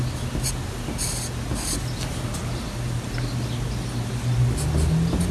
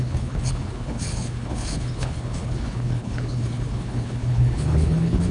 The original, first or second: first